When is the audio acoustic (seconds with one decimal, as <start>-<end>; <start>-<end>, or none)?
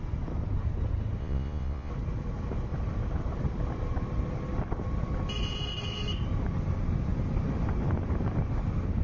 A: 0.0-1.2; 1.9-9.0